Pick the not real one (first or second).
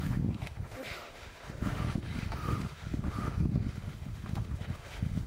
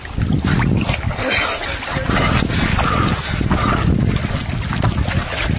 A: first